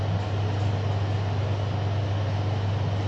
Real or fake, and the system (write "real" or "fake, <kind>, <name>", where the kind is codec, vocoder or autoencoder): real